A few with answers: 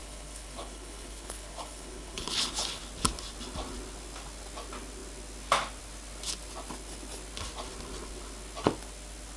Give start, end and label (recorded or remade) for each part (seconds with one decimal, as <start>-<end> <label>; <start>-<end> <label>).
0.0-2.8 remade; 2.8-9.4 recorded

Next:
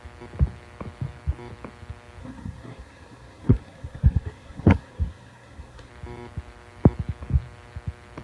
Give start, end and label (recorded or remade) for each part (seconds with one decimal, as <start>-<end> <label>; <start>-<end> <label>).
0.0-2.2 recorded; 2.2-5.9 remade; 5.9-8.2 recorded

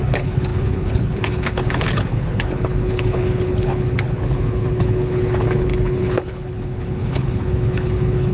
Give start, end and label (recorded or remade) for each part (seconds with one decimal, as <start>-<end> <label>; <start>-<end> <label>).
0.0-8.3 remade